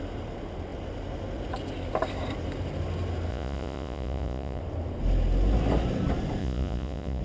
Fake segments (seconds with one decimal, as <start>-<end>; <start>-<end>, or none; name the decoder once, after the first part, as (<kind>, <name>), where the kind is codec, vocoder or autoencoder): 3.3-4.6 (vocoder, Vocos); 6.4-7.2